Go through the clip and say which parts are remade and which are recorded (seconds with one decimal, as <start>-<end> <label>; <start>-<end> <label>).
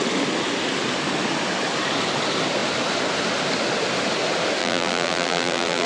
0.0-4.6 recorded; 4.6-5.9 remade